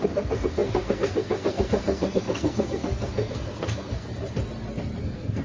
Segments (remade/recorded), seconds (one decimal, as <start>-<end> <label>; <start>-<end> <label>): 0.0-4.1 remade; 4.1-5.0 recorded; 5.0-5.4 remade